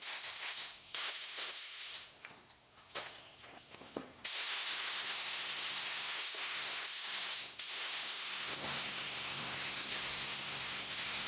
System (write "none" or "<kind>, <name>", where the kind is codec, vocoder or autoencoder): codec, SNAC